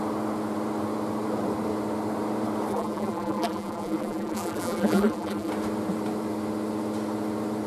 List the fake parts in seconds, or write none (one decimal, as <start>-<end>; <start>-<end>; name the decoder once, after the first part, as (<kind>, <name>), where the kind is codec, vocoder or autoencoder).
2.7-5.5 (vocoder, BigVGAN v2)